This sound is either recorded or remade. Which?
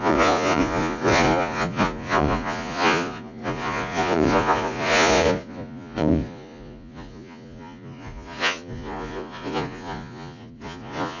remade